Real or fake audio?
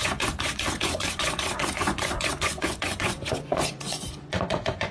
fake